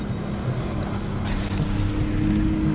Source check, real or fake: real